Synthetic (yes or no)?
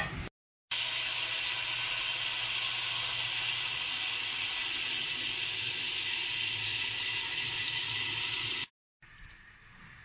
no